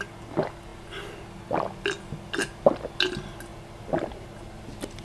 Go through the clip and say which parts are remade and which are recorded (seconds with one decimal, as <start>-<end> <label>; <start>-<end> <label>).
0.0-5.0 recorded